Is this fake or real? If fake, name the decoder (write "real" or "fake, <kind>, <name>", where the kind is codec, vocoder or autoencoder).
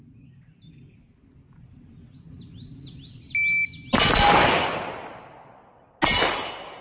real